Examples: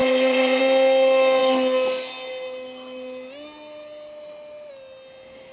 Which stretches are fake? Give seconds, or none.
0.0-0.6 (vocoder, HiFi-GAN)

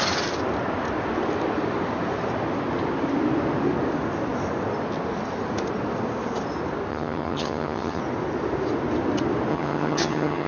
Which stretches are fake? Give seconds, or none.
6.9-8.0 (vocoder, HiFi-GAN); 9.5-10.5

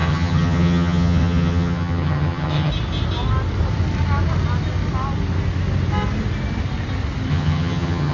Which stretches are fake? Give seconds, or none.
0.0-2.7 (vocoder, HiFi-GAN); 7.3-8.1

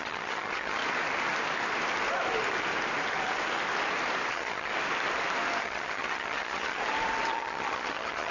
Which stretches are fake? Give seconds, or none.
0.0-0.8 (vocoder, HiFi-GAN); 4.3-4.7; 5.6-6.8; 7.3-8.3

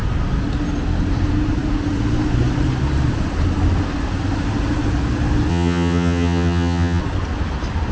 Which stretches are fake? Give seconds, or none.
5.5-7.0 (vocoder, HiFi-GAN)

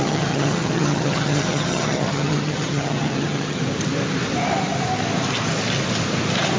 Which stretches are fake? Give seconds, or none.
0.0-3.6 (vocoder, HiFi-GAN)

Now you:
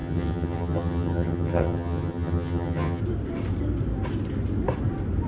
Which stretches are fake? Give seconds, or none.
0.0-3.0 (vocoder, HiFi-GAN)